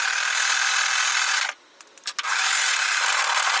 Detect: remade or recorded recorded